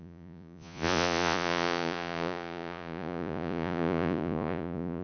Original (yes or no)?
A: no